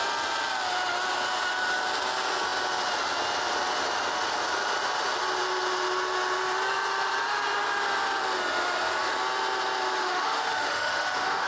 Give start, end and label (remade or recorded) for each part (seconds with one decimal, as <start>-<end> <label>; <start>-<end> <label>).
0.0-10.0 recorded; 10.0-11.5 remade